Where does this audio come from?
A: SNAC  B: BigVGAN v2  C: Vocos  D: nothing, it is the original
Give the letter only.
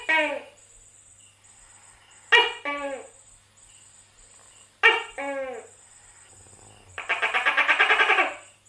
D